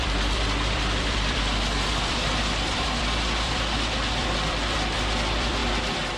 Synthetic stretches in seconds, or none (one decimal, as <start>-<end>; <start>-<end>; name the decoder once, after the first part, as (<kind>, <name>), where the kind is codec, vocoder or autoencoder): 0.0-5.6 (vocoder, BigVGAN v2)